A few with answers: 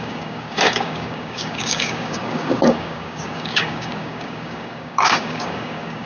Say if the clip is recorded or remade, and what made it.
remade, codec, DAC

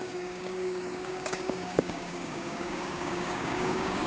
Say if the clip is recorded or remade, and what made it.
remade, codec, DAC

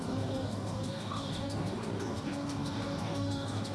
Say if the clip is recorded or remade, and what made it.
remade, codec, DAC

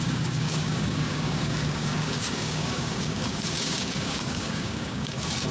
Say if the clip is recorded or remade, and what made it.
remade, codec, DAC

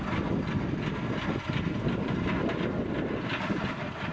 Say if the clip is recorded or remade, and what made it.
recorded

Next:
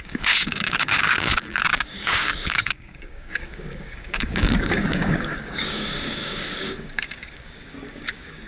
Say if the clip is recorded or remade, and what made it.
remade, codec, DAC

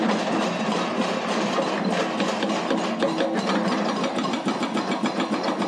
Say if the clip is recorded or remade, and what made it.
recorded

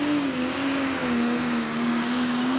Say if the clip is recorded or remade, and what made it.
remade, codec, DAC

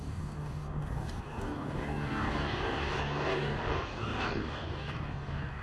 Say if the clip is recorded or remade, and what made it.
remade, codec, DAC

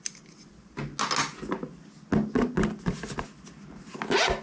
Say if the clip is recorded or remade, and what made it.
recorded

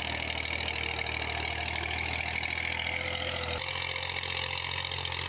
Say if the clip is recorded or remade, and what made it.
recorded